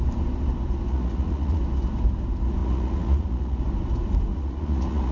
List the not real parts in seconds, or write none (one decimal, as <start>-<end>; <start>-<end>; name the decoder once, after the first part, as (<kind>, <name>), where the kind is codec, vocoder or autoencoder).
0.9-1.6 (vocoder, Vocos); 2.6-3.6; 4.3-5.1

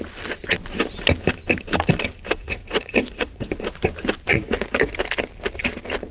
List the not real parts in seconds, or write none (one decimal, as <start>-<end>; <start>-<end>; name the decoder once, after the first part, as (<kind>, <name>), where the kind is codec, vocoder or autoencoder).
2.4-3.8 (vocoder, Vocos); 4.3-4.9

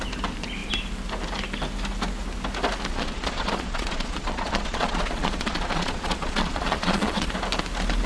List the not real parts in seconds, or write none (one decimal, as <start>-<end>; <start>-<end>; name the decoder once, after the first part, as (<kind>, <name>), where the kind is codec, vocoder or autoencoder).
2.9-7.3 (vocoder, Vocos)